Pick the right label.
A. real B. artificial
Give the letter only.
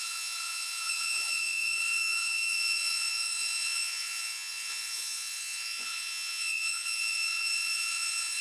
B